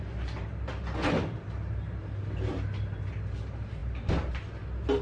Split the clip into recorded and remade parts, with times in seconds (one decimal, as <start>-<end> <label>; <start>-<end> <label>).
0.0-5.0 recorded